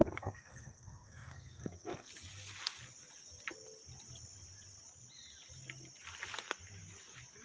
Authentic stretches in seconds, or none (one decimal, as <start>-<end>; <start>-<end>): 2.1-7.4